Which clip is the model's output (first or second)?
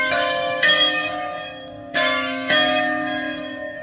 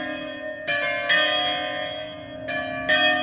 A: first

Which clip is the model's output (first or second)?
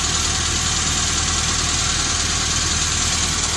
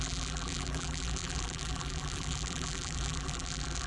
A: second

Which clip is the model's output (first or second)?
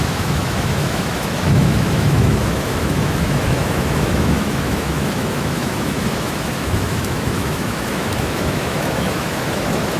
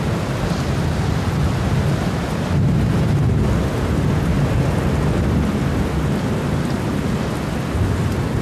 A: first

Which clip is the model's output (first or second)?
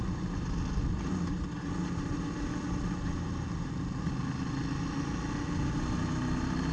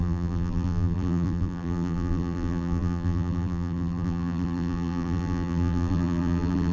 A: second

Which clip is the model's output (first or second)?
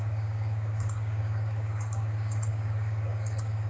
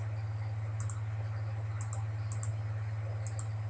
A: first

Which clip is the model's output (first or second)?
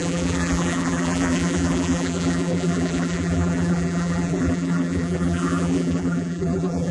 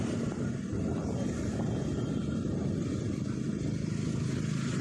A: first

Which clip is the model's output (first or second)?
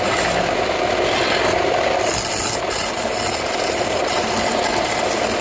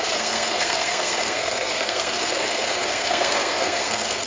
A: second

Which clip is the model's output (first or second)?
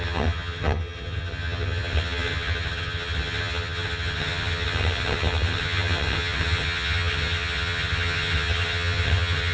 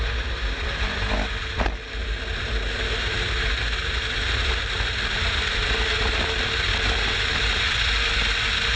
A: first